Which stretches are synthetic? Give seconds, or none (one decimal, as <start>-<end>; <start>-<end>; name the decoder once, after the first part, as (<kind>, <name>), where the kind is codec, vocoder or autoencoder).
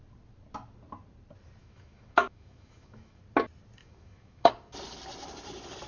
1.6-3.2 (autoencoder, DAC-VAE); 3.8-4.5